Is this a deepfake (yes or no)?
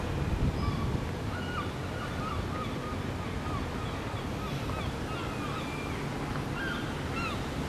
no